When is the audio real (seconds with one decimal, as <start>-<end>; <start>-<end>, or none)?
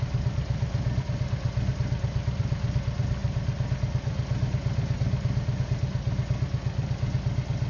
0.0-7.7